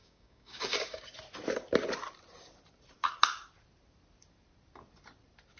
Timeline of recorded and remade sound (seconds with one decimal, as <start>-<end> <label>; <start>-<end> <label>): 0.0-1.0 remade; 1.0-5.6 recorded